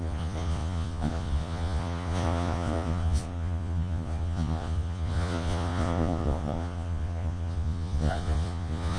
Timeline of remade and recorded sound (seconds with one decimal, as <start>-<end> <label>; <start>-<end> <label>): 0.0-9.0 remade